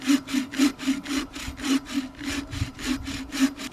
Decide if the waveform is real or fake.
real